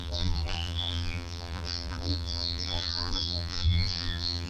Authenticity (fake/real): fake